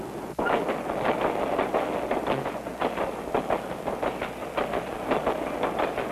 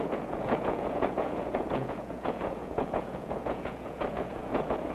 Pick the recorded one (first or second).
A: first